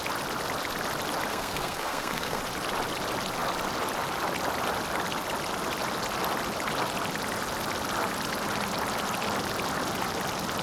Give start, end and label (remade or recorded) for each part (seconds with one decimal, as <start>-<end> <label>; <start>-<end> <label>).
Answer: 0.0-1.3 recorded; 1.3-2.4 remade; 2.4-10.6 recorded